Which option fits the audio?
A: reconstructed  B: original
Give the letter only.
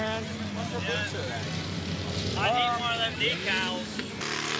B